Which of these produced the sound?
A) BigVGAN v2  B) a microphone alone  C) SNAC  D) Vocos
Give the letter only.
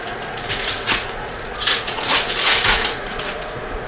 D